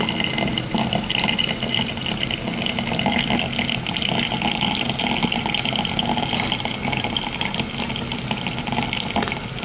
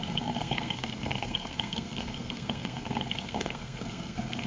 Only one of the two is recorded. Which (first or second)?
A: first